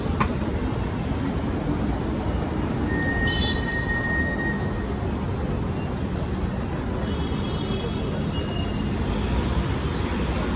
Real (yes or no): yes